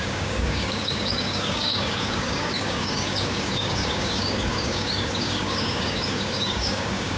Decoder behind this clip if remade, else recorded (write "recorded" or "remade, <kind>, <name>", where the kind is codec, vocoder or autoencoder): remade, codec, DAC